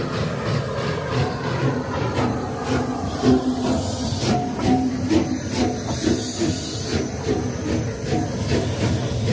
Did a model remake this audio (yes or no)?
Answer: no